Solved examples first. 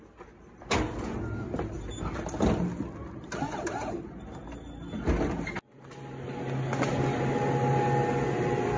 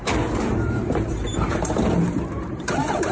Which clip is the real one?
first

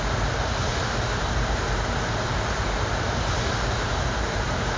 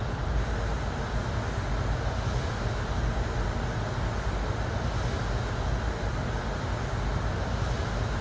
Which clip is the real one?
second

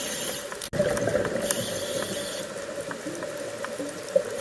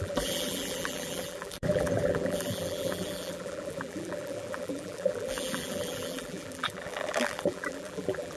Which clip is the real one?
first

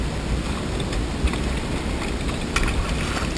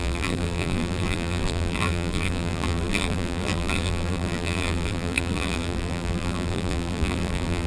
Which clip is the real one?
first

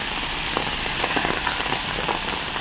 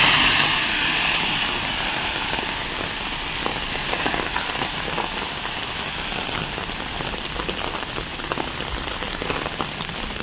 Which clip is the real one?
first